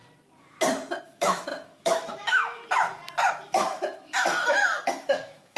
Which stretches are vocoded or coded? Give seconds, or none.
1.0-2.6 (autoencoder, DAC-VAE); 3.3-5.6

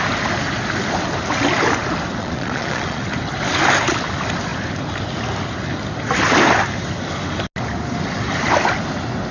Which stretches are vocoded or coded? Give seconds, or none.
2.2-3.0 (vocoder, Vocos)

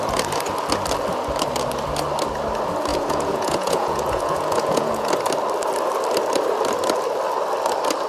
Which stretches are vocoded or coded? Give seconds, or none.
2.9-5.1 (vocoder, Vocos)

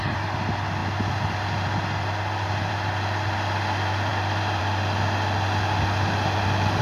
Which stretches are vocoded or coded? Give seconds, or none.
none

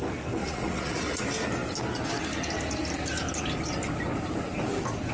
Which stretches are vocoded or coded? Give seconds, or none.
0.4-1.2 (vocoder, Vocos)